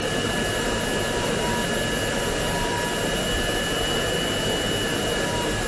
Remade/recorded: recorded